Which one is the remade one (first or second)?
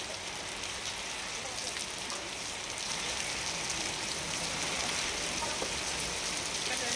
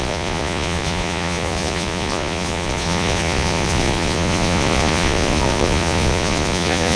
second